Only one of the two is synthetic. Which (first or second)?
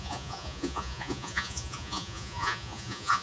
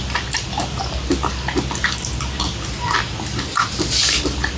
first